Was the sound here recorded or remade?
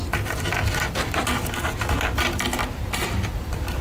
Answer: recorded